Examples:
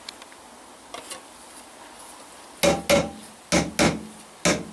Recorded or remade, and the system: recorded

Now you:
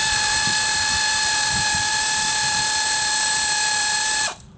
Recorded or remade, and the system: remade, vocoder, BigVGAN v2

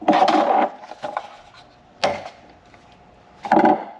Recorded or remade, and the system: recorded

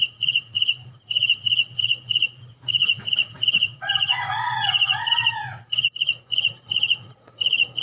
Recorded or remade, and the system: remade, vocoder, Vocos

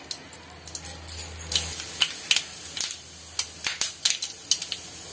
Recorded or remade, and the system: recorded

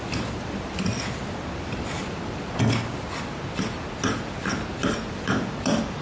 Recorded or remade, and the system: recorded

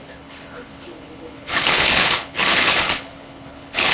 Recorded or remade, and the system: remade, codec, HILCodec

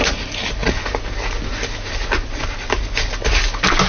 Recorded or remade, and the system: recorded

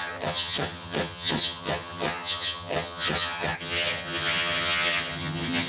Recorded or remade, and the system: remade, vocoder, HiFi-GAN